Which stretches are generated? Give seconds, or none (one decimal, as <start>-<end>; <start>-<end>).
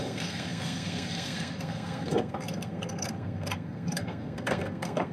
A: 0.0-5.1